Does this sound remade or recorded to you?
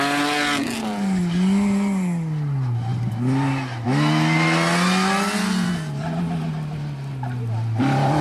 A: recorded